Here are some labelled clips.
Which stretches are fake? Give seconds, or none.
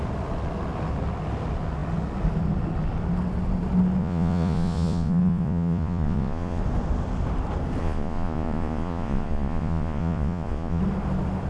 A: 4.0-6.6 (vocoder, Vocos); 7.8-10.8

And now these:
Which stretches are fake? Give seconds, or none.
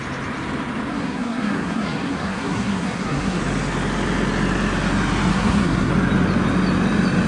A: 0.9-3.4 (codec, SNAC); 5.3-5.9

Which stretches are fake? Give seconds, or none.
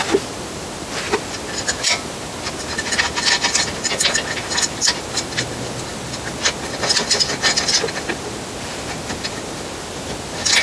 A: none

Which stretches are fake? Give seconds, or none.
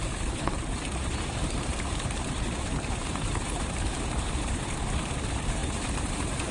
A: 0.0-6.5 (vocoder, BigVGAN v2)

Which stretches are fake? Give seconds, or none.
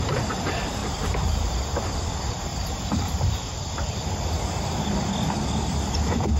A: 0.8-1.5 (vocoder, BigVGAN v2); 2.5-4.1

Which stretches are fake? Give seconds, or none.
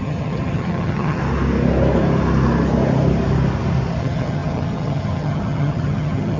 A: 0.0-1.2 (vocoder, HiFi-GAN); 4.0-6.4